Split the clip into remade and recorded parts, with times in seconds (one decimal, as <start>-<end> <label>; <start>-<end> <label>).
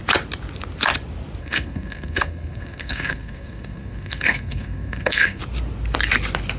0.0-1.4 recorded; 1.4-5.4 remade; 5.4-6.6 recorded